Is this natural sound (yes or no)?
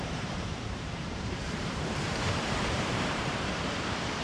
no